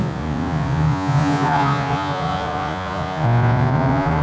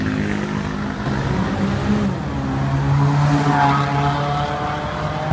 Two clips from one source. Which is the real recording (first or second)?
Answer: second